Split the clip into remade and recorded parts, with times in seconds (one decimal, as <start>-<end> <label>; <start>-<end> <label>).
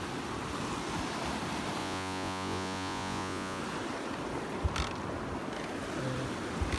0.0-1.8 recorded; 1.8-3.6 remade; 3.6-6.8 recorded